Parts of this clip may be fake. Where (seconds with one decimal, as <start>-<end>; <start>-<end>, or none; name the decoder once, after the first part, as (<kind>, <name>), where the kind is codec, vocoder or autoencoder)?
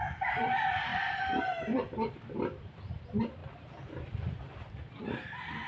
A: 0.0-5.7 (vocoder, BigVGAN v2)